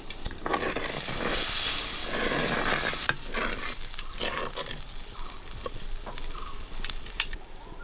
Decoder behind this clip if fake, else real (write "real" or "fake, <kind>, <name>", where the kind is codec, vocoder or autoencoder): real